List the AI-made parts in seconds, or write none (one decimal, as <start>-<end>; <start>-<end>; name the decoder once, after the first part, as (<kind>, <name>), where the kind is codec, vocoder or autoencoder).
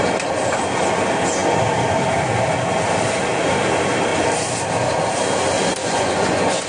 5.8-6.7 (vocoder, Vocos)